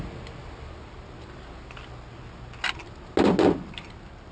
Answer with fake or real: real